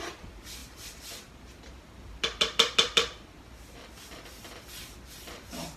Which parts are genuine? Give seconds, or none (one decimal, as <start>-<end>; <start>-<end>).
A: 0.0-5.8